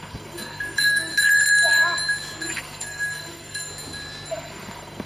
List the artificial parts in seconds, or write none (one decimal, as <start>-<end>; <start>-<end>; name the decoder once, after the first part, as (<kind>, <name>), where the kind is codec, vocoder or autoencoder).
0.0-1.1 (codec, SNAC); 2.5-3.7; 4.3-5.1